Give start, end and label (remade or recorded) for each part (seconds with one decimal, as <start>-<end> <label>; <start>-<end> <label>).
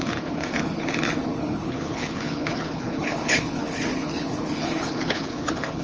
0.0-5.8 remade